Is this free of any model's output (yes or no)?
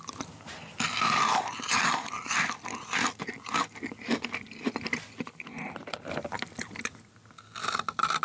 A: yes